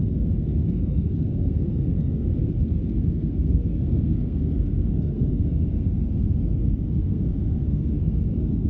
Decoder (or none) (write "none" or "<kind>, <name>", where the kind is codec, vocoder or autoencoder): codec, SNAC